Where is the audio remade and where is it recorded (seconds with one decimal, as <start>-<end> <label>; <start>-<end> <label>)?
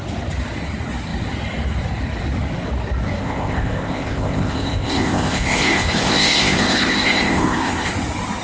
0.0-3.2 recorded; 3.2-7.9 remade; 7.9-8.4 recorded